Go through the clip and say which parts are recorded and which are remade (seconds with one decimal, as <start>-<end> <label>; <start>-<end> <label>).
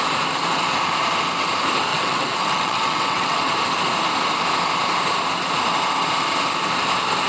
0.0-1.9 recorded; 1.9-3.4 remade; 3.4-7.3 recorded